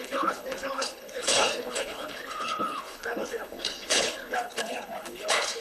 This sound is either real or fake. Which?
fake